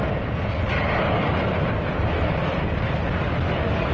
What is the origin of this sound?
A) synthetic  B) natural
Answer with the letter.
B